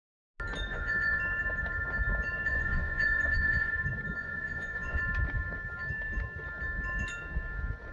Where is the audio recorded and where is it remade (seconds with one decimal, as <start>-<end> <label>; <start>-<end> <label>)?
0.0-0.7 recorded; 0.7-1.2 remade; 1.2-2.5 recorded; 2.5-3.7 remade; 3.7-4.2 recorded; 4.2-5.0 remade; 5.0-7.9 recorded